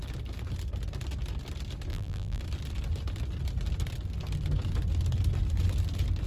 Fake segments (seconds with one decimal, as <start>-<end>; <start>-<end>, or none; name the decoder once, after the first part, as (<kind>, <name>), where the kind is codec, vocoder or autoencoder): 1.9-2.4 (vocoder, BigVGAN v2)